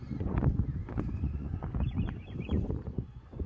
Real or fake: fake